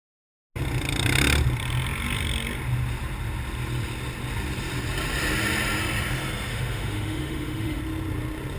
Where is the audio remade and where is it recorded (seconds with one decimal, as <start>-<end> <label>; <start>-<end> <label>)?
0.0-6.5 recorded; 6.5-7.8 remade; 7.8-8.6 recorded